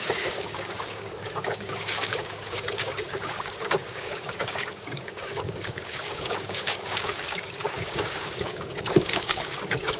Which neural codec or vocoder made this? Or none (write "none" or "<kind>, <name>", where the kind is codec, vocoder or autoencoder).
codec, DAC